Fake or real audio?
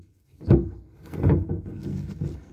fake